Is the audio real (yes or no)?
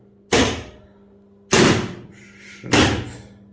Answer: yes